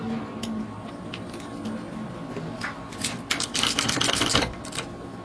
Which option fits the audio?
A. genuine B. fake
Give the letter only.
A